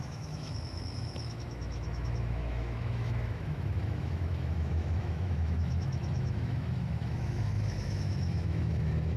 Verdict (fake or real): fake